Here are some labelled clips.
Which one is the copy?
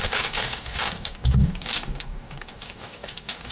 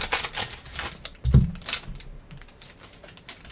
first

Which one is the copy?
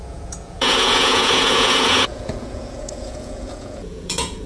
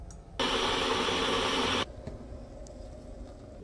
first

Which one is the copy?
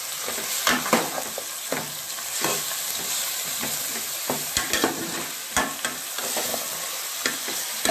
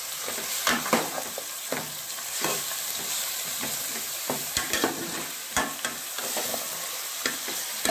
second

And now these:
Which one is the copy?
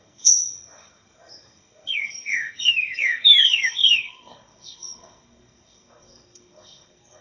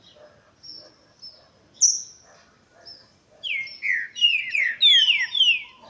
first